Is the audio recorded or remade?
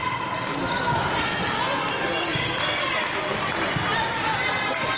recorded